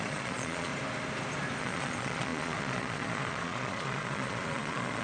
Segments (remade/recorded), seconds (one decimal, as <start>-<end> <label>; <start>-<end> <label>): 0.0-0.7 remade; 0.7-1.6 recorded; 1.6-5.0 remade